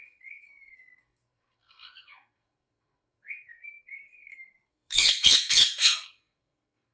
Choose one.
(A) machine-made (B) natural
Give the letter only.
A